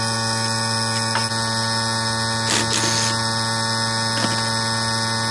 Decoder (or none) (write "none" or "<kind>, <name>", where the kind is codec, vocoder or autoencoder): none